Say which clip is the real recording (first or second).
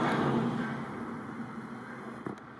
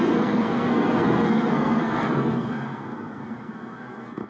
first